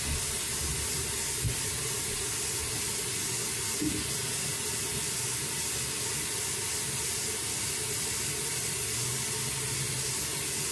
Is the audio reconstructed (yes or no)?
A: no